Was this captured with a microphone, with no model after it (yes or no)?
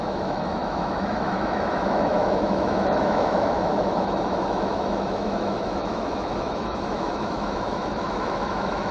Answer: no